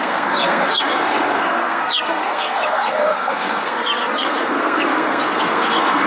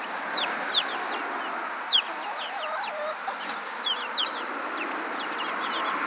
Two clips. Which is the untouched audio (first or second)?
second